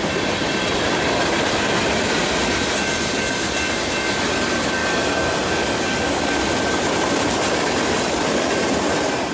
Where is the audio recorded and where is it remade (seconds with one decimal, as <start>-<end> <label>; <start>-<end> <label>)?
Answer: 0.0-9.3 recorded